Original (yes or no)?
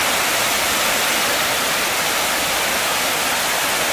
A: yes